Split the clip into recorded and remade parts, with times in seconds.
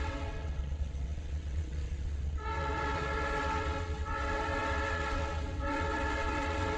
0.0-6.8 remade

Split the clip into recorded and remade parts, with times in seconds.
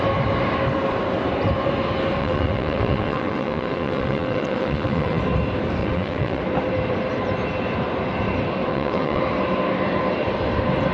0.0-2.2 recorded; 2.2-5.2 remade; 5.2-5.8 recorded; 5.8-6.4 remade; 6.4-8.7 recorded; 8.7-9.2 remade; 9.2-10.9 recorded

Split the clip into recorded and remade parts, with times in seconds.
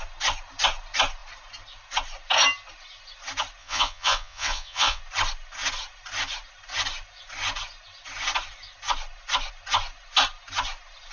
0.0-3.6 recorded; 3.6-5.0 remade; 5.0-11.1 recorded